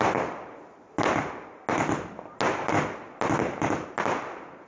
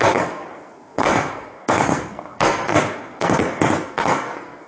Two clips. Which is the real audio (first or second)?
first